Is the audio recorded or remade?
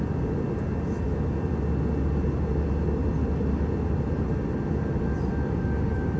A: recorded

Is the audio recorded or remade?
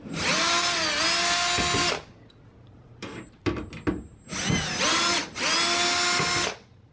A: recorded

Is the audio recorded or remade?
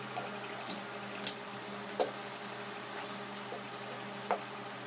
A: recorded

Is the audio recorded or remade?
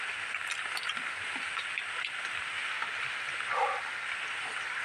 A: recorded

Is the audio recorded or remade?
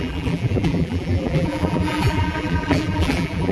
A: remade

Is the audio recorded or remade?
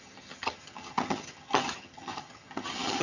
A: remade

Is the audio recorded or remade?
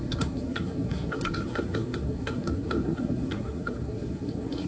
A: remade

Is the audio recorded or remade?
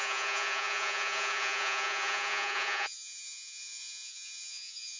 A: remade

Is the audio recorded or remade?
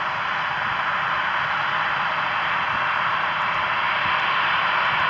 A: recorded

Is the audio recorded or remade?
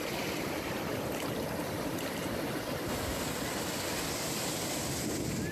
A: recorded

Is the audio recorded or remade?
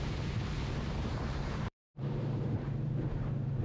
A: remade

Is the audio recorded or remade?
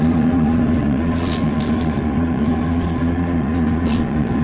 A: remade